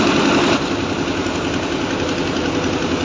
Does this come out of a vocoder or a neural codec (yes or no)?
no